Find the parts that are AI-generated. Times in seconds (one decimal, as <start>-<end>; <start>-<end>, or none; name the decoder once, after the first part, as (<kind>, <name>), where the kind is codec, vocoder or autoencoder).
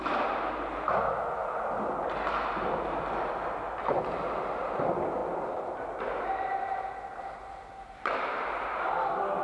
none